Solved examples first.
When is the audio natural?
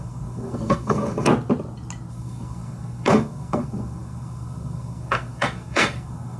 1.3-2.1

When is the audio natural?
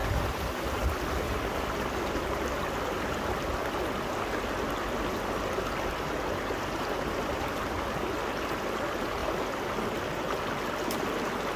0.6-11.6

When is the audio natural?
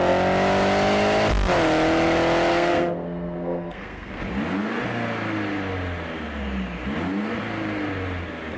0.0-2.5; 4.2-8.6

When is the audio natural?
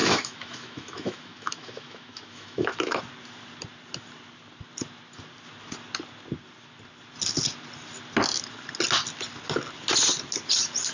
3.0-10.9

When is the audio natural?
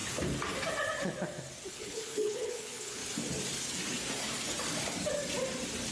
0.0-1.7; 3.0-5.9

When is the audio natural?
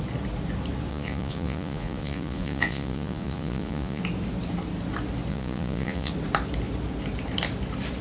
0.0-0.9; 4.0-5.3; 6.1-8.0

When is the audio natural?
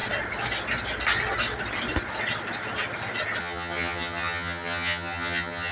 0.0-3.4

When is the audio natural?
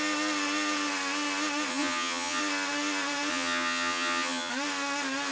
0.0-1.7; 2.4-3.3; 4.5-5.3